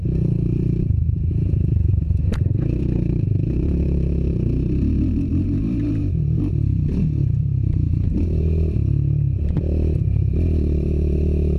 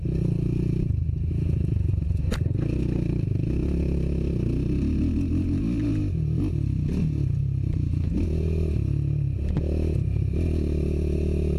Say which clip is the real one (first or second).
second